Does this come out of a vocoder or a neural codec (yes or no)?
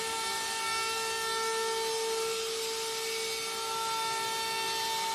no